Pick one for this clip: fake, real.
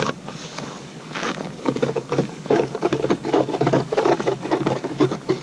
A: fake